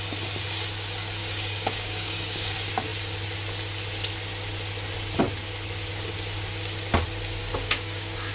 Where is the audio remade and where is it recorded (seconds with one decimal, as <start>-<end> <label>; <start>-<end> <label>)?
0.0-1.2 recorded; 1.2-2.5 remade; 2.5-7.4 recorded; 7.4-8.3 remade